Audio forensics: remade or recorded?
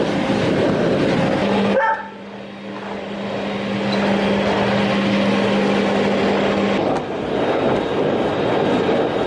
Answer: recorded